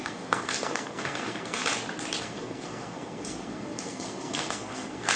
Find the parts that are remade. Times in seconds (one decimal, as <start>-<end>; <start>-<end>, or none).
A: 0.0-1.6; 2.2-5.2